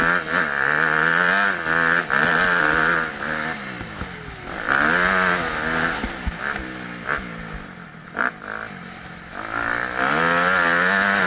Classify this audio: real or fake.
real